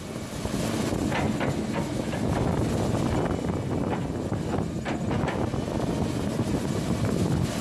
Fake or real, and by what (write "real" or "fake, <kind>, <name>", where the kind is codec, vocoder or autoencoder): real